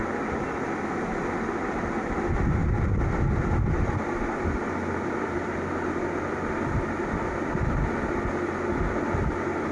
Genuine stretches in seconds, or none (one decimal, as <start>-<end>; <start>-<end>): 0.0-9.7